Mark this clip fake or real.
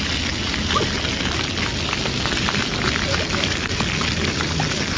real